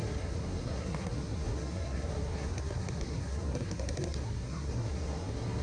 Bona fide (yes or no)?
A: no